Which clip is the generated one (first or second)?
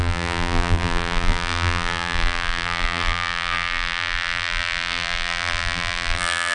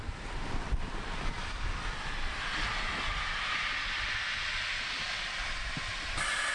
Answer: first